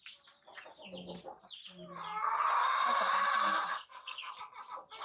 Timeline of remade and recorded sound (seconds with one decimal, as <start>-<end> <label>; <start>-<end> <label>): 0.0-3.7 recorded; 3.7-4.3 remade; 4.3-5.0 recorded